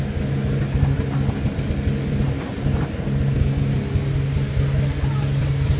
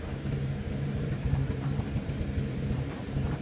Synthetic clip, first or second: second